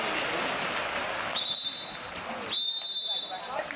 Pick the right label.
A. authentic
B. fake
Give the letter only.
A